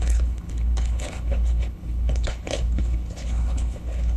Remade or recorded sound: remade